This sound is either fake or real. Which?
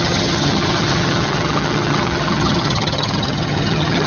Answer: fake